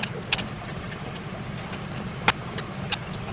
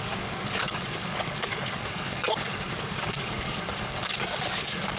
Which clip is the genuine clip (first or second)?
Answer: first